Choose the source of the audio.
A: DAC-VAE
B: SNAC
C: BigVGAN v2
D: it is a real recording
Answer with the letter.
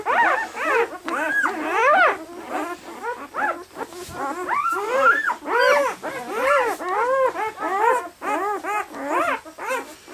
D